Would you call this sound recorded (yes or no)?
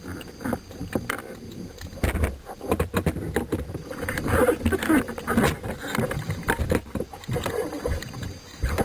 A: yes